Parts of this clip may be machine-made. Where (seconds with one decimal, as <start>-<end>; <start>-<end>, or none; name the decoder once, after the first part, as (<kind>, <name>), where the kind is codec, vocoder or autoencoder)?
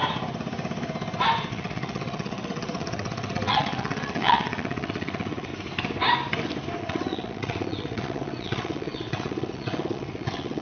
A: 1.5-5.5 (vocoder, WaveNeXt); 6.8-10.6